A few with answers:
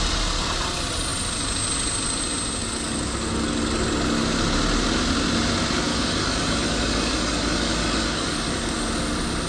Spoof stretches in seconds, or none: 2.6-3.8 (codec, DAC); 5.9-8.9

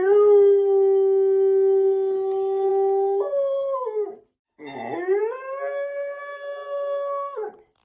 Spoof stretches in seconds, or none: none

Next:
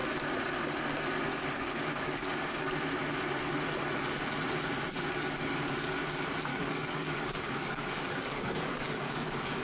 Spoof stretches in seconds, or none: 1.3-2.7 (codec, DAC); 6.5-9.6